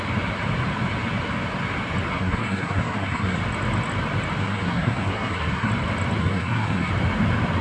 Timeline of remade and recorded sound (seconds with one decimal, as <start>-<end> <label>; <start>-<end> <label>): 0.0-2.1 recorded; 2.1-3.4 remade; 3.4-4.4 recorded; 4.4-5.7 remade; 5.7-6.2 recorded; 6.2-6.9 remade; 6.9-7.6 recorded